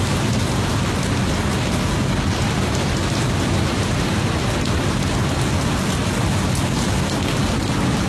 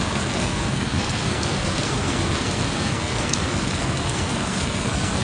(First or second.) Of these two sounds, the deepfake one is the second